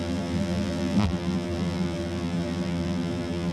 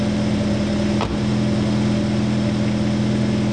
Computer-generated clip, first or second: first